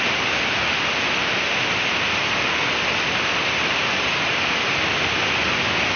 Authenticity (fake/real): real